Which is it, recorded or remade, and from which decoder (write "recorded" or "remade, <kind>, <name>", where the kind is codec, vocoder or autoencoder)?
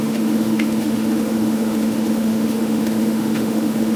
remade, autoencoder, DAC-VAE